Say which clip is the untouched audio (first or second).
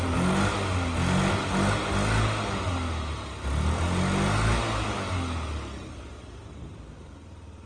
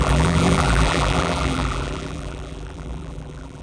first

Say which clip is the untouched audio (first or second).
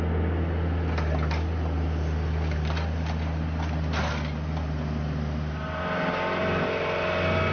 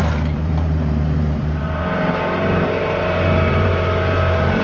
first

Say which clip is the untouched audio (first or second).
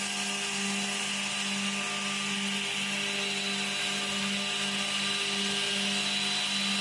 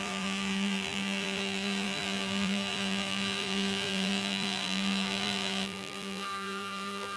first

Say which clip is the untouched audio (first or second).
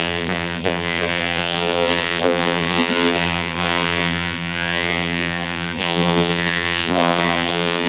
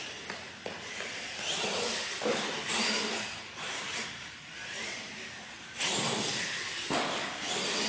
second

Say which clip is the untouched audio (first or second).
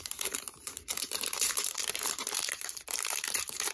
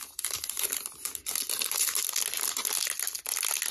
second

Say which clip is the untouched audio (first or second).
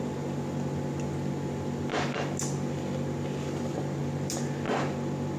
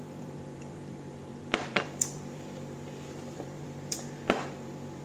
first